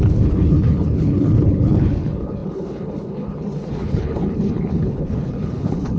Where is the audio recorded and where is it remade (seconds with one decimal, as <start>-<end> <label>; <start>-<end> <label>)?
0.0-6.0 remade